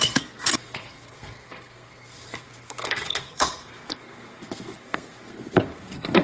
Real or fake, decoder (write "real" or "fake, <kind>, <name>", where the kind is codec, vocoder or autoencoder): fake, codec, SNAC